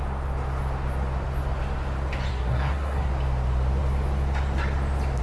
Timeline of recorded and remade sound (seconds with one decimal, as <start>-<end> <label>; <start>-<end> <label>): 0.0-2.3 recorded; 2.3-3.1 remade; 3.1-5.2 recorded